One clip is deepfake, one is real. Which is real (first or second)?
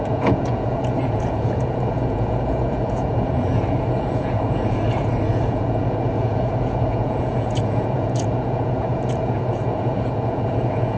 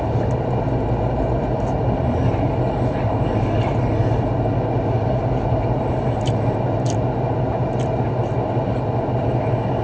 second